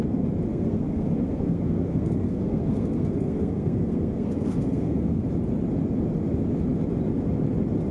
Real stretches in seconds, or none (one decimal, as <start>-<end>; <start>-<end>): 0.0-0.5; 5.2-7.9